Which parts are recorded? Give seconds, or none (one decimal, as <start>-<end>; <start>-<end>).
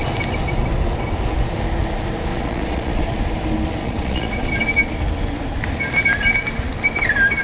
0.0-2.3; 3.2-3.8; 4.5-7.4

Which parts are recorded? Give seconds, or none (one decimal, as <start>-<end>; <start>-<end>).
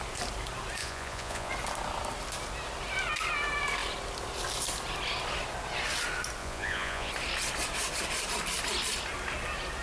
0.0-0.8; 1.5-6.4; 7.1-9.8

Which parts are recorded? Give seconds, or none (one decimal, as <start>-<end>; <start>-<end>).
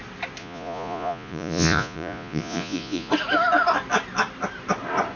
0.0-0.4; 3.1-5.2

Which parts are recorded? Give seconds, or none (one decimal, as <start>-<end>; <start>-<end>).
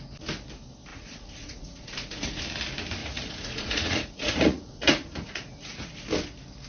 0.0-0.9; 2.4-3.0; 5.9-6.7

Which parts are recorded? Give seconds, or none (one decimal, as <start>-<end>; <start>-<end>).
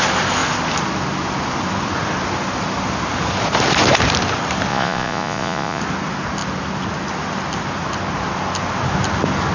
0.0-4.7; 5.8-9.5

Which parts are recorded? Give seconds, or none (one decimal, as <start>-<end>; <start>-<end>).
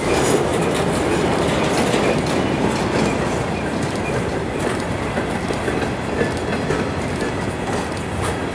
0.0-8.5